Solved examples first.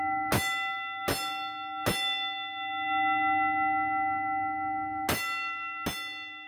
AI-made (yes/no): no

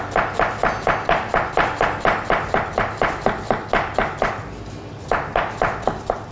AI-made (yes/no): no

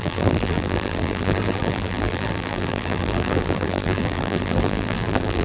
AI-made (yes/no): yes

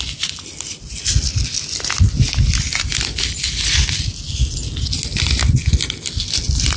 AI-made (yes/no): no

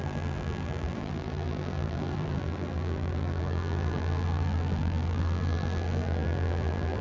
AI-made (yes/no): yes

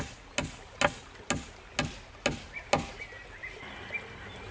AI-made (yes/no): no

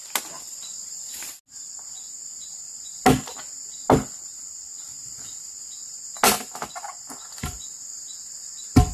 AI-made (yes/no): no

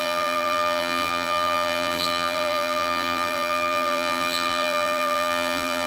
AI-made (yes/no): yes